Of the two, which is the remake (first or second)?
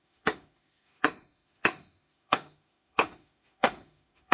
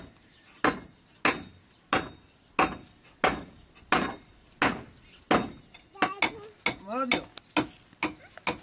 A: first